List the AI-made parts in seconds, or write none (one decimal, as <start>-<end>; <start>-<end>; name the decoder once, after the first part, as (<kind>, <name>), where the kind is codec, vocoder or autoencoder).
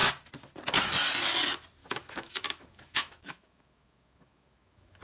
1.8-5.0 (autoencoder, DAC-VAE)